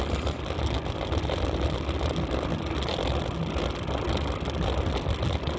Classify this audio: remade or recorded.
recorded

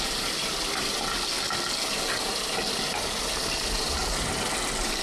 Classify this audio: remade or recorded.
recorded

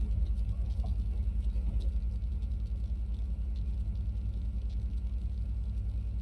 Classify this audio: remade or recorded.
recorded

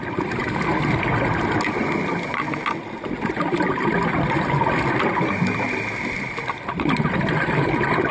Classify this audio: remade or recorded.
recorded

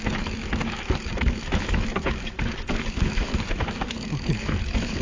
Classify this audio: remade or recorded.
remade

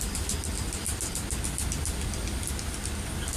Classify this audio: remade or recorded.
recorded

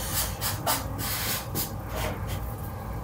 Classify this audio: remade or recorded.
recorded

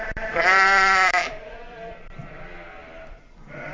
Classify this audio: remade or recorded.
remade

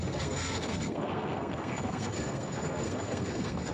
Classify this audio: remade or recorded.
remade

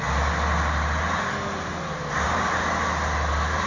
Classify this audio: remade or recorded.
recorded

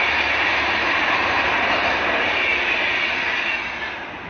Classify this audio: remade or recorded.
recorded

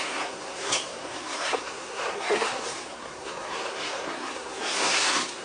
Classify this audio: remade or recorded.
remade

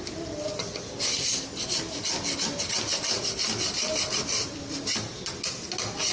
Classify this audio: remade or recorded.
recorded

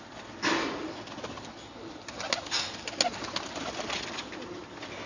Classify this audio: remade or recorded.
recorded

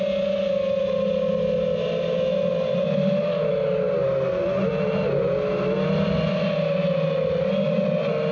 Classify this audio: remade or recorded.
recorded